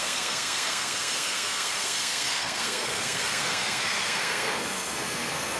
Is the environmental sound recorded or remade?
remade